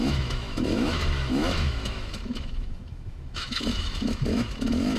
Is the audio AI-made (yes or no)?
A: yes